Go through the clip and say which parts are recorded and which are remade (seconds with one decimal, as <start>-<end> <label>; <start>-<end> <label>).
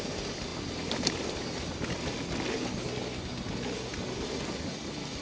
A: 0.0-5.2 recorded